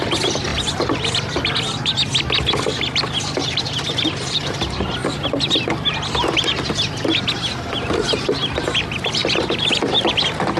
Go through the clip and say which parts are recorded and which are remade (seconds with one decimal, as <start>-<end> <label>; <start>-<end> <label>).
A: 0.0-5.0 remade; 5.0-7.5 recorded; 7.5-10.6 remade